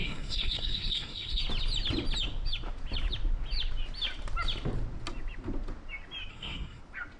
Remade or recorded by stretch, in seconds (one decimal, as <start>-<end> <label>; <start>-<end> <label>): 0.0-1.4 remade; 1.4-6.3 recorded; 6.3-6.8 remade; 6.8-7.2 recorded